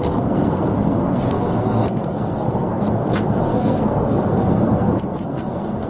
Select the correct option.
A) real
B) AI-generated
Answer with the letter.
B